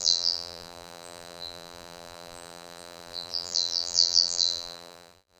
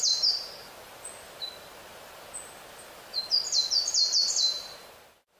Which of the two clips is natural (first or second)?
second